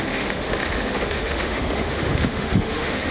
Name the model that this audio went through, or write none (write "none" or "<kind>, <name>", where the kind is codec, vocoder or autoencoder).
autoencoder, DAC-VAE